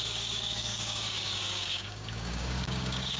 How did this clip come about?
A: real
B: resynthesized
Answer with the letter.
B